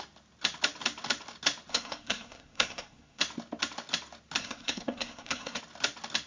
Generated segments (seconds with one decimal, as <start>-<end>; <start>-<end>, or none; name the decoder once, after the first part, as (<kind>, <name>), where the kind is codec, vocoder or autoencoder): 1.7-3.2 (codec, SNAC); 4.4-5.6